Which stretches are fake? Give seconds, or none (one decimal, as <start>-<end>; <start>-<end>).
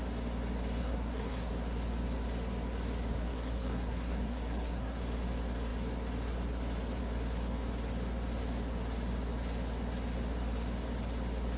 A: 0.8-1.5; 3.2-5.0